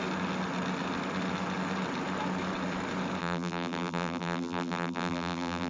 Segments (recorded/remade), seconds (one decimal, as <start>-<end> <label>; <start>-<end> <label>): 0.0-3.2 recorded; 3.2-5.7 remade